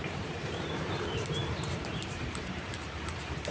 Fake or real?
fake